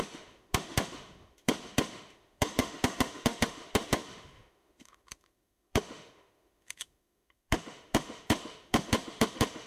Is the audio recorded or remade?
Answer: remade